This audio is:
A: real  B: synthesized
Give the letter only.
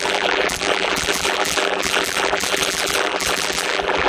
B